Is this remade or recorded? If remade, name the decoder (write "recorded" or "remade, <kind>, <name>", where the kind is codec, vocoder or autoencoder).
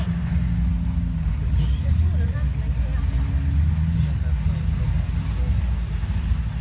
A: recorded